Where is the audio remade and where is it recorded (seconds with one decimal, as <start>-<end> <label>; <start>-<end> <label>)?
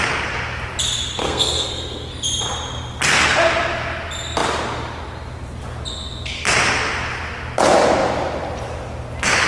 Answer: 0.0-1.2 recorded; 1.2-2.1 remade; 2.1-9.5 recorded